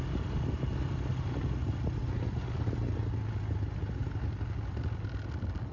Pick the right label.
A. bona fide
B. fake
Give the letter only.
A